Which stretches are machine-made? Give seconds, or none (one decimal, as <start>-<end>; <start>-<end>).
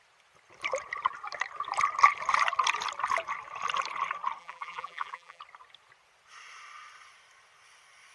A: 4.4-5.4